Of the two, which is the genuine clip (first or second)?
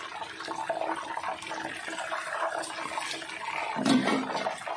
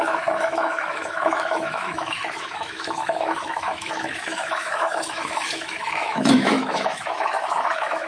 first